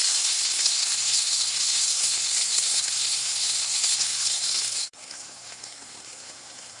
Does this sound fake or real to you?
fake